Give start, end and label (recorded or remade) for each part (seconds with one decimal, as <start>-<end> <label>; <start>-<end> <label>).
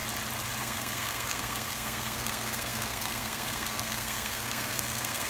0.0-0.6 recorded; 0.6-5.3 remade